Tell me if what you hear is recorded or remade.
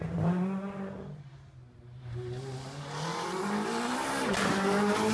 recorded